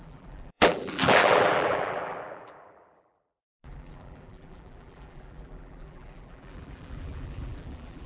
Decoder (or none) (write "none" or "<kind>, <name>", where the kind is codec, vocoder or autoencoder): vocoder, BigVGAN v2